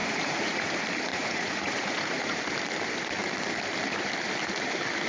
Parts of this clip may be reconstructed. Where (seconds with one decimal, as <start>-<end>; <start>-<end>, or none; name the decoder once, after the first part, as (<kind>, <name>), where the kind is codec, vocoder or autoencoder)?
0.0-0.7 (vocoder, Vocos); 1.1-2.4